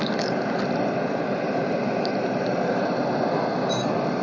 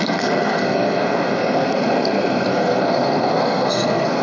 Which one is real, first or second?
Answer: first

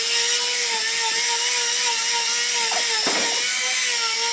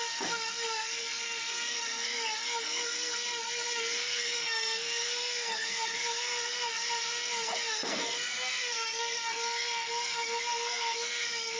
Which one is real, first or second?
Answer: first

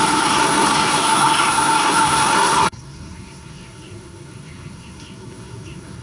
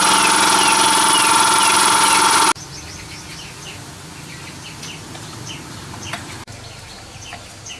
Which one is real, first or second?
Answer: second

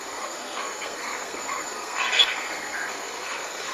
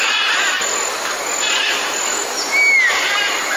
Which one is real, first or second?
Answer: second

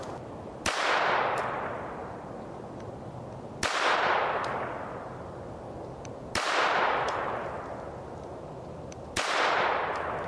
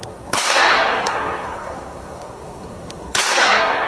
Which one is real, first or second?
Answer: first